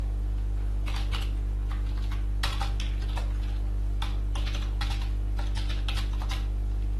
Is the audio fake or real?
real